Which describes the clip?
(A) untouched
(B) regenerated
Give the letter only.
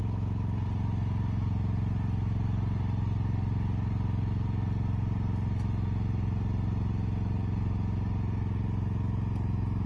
A